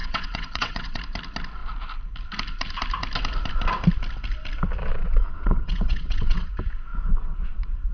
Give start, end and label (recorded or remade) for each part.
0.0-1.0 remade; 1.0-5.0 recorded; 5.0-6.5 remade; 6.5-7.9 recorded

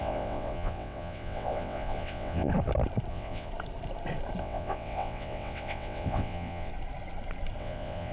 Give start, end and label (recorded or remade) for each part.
0.0-2.5 remade; 2.5-3.1 recorded; 3.1-3.5 remade; 3.5-4.4 recorded; 4.4-6.7 remade; 6.7-7.6 recorded; 7.6-8.1 remade

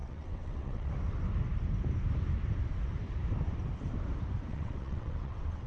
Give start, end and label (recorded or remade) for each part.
0.0-0.9 remade; 0.9-4.5 recorded; 4.5-5.7 remade

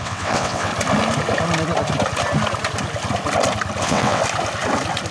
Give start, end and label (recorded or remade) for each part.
0.0-0.7 remade; 0.7-3.8 recorded; 3.8-4.2 remade; 4.2-5.1 recorded